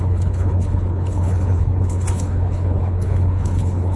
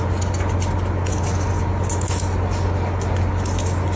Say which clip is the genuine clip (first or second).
second